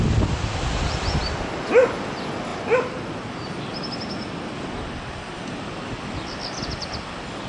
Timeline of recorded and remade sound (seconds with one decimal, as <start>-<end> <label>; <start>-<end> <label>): 0.0-7.5 recorded